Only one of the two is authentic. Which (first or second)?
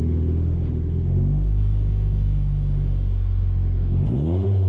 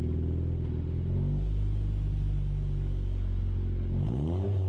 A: second